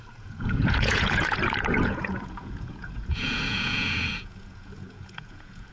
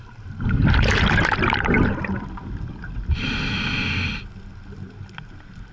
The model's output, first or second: first